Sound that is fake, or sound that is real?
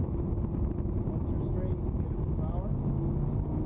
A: real